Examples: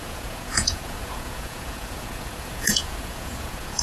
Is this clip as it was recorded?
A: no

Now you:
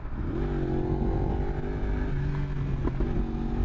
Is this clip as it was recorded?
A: yes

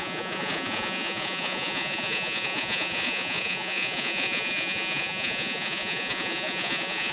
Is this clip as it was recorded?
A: no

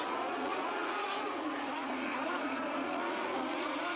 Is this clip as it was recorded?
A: no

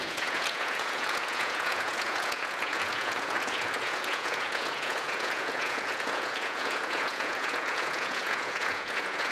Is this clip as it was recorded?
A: no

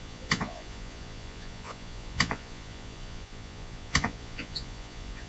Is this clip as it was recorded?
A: no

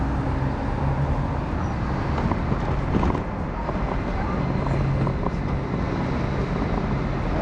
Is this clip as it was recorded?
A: yes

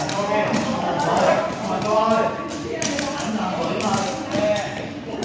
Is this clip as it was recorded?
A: yes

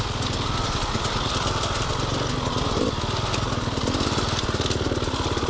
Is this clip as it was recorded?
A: yes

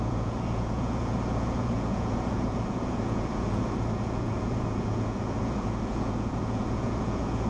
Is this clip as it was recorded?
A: no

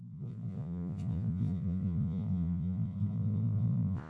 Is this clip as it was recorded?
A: no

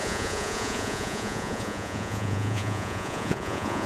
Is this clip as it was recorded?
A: no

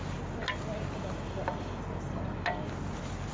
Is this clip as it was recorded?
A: yes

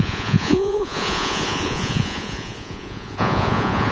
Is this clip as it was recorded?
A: no